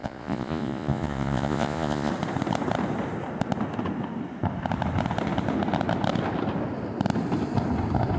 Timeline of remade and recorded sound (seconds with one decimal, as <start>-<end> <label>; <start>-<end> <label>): 0.0-2.1 remade; 2.1-8.2 recorded